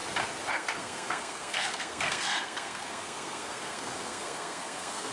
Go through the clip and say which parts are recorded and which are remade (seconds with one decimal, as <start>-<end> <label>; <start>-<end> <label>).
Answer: 0.0-0.5 recorded; 0.5-5.1 remade

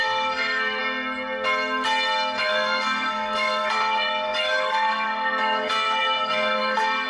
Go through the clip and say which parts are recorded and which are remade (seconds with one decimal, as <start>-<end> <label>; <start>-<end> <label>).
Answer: 0.0-0.8 remade; 0.8-2.4 recorded; 2.4-7.1 remade

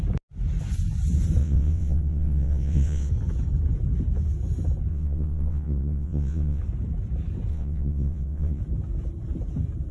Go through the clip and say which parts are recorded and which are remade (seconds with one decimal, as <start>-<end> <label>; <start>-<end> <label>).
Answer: 0.0-1.4 recorded; 1.4-3.1 remade; 3.1-4.9 recorded; 4.9-6.6 remade; 6.6-7.5 recorded; 7.5-8.6 remade; 8.6-9.9 recorded

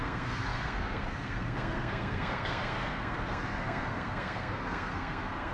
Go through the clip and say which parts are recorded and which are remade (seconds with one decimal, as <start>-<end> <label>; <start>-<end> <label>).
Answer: 0.0-5.5 remade

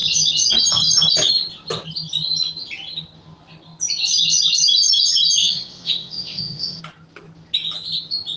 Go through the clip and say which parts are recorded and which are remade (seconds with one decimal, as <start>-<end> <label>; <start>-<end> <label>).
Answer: 0.0-5.4 recorded; 5.4-6.8 remade; 6.8-8.4 recorded

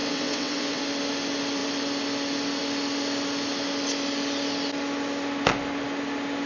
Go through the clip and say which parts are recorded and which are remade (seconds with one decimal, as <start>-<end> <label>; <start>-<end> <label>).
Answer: 0.0-0.8 remade; 0.8-6.5 recorded